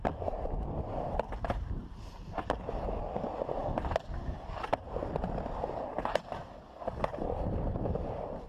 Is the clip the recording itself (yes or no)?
yes